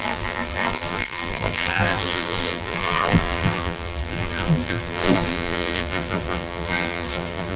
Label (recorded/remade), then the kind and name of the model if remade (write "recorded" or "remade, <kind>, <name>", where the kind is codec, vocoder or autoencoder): remade, vocoder, BigVGAN v2